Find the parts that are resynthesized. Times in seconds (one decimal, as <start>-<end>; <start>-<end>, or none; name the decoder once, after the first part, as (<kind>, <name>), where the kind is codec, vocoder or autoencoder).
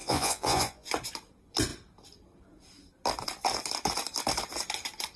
0.0-0.9 (vocoder, Vocos)